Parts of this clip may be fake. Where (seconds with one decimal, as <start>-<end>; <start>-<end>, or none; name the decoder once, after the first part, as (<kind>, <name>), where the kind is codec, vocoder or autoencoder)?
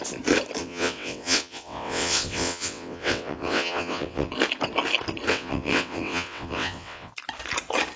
0.6-4.3 (vocoder, WaveNeXt); 5.3-7.1